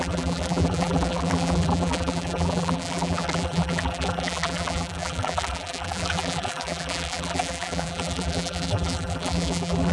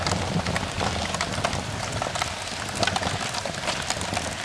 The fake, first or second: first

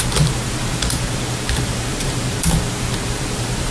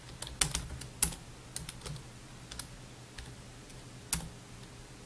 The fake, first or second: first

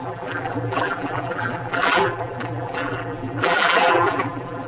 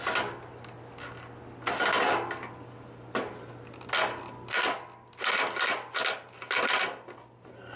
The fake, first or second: first